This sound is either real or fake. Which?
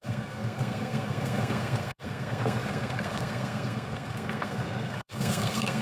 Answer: fake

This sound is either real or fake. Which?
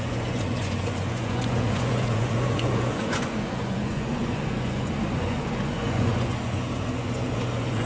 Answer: fake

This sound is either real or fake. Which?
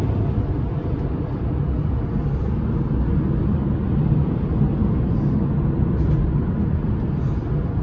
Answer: real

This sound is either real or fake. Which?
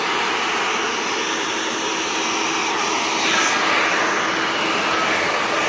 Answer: real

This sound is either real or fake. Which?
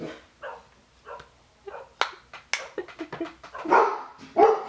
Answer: real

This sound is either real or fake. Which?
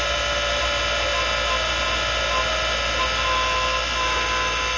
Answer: real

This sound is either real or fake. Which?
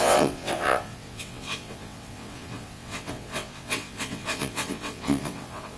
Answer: fake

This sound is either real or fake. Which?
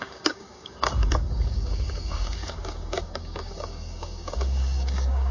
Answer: fake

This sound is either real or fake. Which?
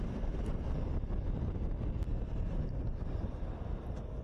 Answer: fake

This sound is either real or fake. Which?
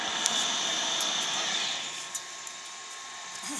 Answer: real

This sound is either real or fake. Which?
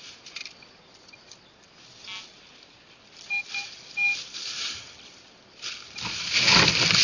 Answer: real